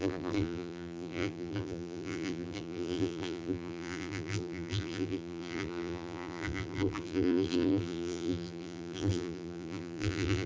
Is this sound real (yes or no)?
no